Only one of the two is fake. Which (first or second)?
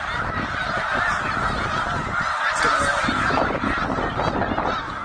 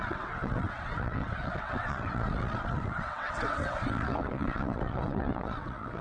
second